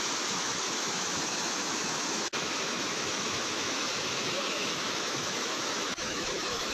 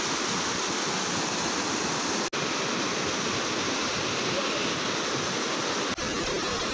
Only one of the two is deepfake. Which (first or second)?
first